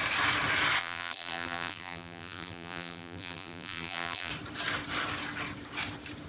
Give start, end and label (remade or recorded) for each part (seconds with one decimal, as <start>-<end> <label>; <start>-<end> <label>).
0.0-0.8 recorded; 0.8-4.3 remade; 4.3-6.3 recorded

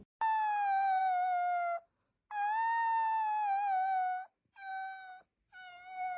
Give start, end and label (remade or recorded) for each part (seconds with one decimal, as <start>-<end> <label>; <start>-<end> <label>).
0.0-6.2 recorded

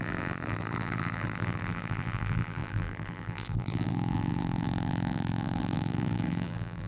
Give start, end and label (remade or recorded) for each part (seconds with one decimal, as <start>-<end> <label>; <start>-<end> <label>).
0.0-6.9 remade